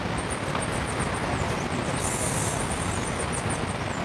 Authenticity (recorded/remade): recorded